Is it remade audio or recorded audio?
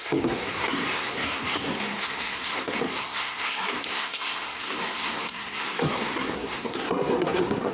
remade